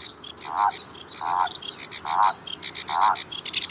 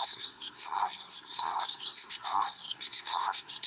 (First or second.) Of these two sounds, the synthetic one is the second